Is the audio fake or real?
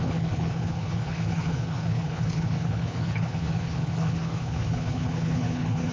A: fake